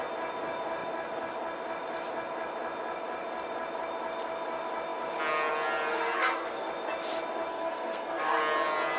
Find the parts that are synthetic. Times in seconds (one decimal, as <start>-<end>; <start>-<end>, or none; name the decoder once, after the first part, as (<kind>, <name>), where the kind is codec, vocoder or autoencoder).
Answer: 5.9-6.7 (codec, SNAC); 7.5-8.4

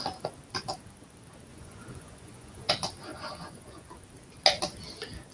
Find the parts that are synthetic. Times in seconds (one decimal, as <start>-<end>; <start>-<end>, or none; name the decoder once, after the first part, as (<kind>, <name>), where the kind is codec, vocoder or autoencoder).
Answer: 1.5-2.7 (vocoder, Vocos); 3.1-3.9

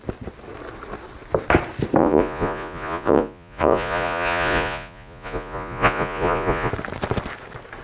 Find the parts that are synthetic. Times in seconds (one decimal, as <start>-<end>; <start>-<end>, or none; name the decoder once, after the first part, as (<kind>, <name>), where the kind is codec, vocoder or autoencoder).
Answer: 2.0-6.7 (vocoder, Vocos)